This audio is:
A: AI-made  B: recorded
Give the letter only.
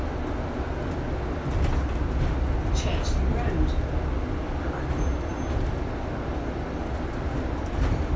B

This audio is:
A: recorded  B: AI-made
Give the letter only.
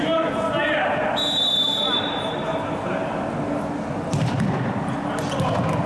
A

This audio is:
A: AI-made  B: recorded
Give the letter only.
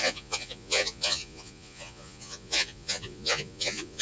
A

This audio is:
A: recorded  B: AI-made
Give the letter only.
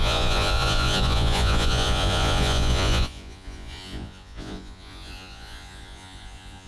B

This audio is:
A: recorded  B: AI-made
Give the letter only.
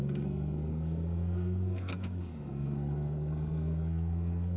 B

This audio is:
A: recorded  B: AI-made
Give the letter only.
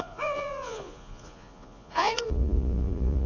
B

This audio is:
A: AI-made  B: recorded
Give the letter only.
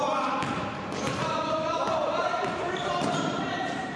A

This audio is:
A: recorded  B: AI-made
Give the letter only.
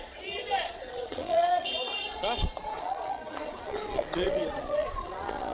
B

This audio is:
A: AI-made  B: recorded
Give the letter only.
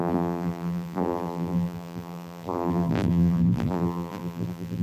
A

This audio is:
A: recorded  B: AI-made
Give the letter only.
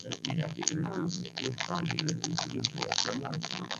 B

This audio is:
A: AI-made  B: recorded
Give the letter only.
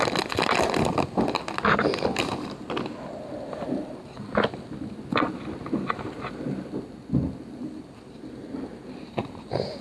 B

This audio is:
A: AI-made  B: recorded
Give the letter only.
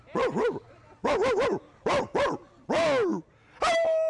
B